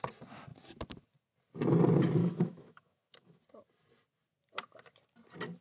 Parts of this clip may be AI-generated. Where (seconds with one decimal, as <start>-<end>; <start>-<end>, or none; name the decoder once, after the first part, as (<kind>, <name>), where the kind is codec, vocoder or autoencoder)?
2.2-3.4 (autoencoder, DAC-VAE)